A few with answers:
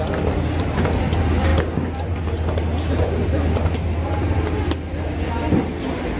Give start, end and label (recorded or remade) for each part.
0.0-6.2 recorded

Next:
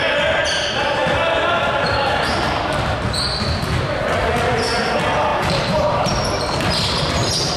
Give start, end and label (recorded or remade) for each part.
0.0-5.3 recorded; 5.3-6.1 remade; 6.1-7.6 recorded

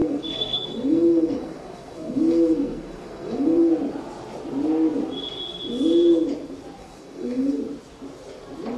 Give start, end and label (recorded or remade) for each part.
0.0-3.7 remade; 3.7-6.8 recorded; 6.8-7.6 remade; 7.6-8.8 recorded

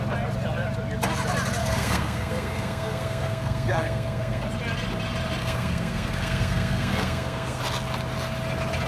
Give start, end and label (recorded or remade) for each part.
0.0-1.6 recorded; 1.6-4.4 remade; 4.4-5.4 recorded; 5.4-7.6 remade; 7.6-8.9 recorded

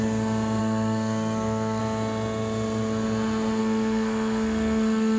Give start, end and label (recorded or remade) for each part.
0.0-0.6 recorded; 0.6-1.8 remade; 1.8-3.6 recorded; 3.6-5.2 remade

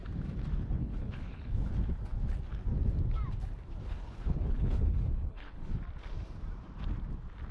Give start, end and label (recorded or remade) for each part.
0.0-0.8 recorded; 0.8-1.7 remade; 1.7-3.8 recorded; 3.8-5.8 remade; 5.8-7.5 recorded